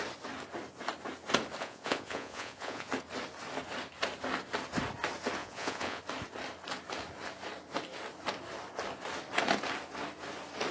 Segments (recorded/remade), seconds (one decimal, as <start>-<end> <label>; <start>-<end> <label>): 0.0-1.6 recorded; 1.6-2.9 remade; 2.9-5.4 recorded; 5.4-6.0 remade; 6.0-10.7 recorded

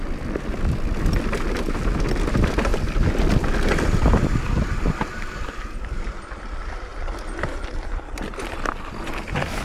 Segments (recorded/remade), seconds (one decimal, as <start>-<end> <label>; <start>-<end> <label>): 0.0-9.6 recorded